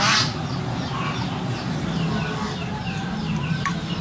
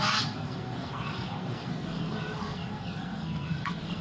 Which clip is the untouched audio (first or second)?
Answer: first